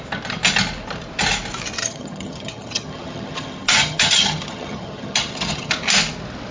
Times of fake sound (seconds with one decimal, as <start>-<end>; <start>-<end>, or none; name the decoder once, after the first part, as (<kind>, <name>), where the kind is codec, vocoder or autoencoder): 1.8-5.7 (vocoder, HiFi-GAN)

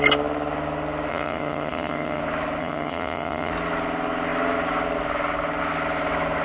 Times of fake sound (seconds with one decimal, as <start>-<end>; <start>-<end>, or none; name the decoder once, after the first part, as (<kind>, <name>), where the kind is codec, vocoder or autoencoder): 1.1-2.2 (vocoder, HiFi-GAN); 2.6-3.5

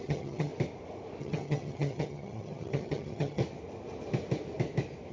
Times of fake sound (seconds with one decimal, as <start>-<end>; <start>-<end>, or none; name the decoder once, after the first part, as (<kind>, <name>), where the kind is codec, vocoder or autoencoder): 0.0-0.5 (vocoder, HiFi-GAN); 1.2-3.4

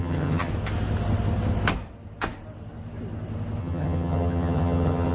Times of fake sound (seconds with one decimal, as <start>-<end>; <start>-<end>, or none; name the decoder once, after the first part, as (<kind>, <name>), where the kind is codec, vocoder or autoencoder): 0.0-0.5 (vocoder, HiFi-GAN); 3.6-5.1